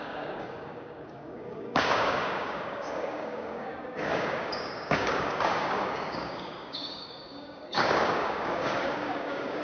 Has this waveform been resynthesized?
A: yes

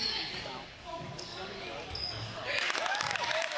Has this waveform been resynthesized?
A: yes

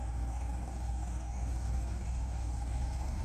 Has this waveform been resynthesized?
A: yes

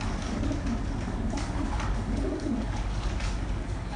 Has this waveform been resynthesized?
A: yes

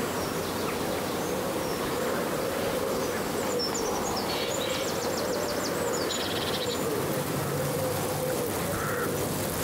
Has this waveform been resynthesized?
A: no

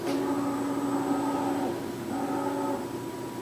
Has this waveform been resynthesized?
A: no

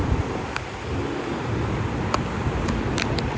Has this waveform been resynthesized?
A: no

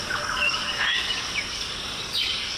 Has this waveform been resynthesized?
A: yes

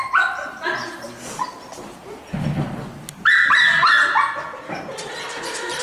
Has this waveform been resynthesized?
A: no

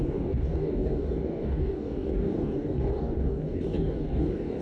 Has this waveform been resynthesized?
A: yes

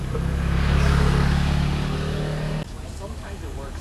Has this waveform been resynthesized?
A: yes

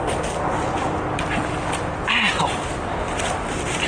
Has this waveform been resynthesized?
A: no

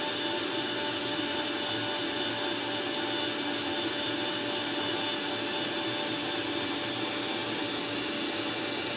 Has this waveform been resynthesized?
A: no